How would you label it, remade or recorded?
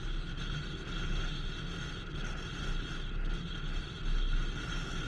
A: recorded